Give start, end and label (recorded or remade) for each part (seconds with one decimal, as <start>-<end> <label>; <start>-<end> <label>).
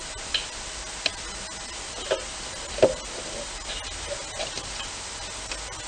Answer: 0.0-5.9 recorded